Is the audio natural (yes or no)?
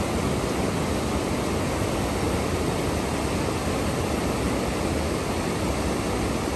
yes